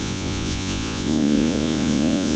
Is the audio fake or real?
fake